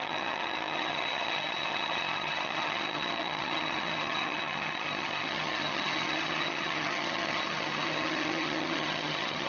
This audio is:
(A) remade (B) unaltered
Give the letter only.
A